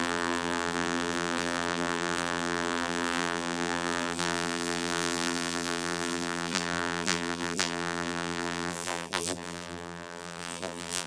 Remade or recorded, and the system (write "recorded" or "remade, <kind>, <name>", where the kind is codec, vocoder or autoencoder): remade, vocoder, BigVGAN v2